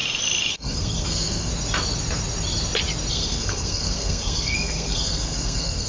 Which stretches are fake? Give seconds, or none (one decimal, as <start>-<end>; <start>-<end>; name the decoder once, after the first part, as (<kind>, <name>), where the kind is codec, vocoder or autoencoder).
0.5-1.5 (codec, SNAC); 3.1-5.9